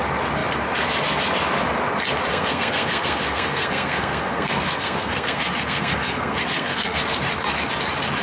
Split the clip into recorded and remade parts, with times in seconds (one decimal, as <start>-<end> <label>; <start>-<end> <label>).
0.0-2.3 recorded; 2.3-7.0 remade; 7.0-8.2 recorded